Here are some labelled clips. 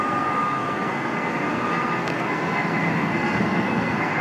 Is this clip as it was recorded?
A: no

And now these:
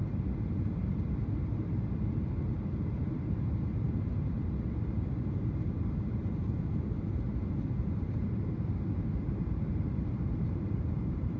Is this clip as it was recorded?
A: no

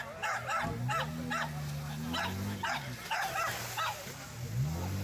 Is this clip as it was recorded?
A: yes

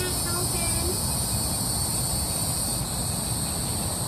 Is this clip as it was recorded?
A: yes